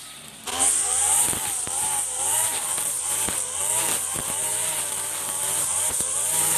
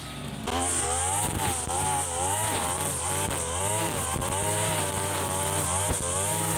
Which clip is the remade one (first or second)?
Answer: first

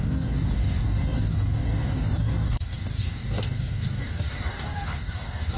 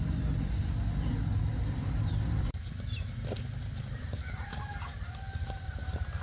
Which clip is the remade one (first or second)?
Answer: first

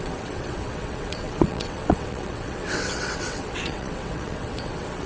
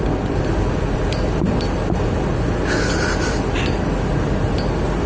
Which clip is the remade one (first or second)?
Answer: first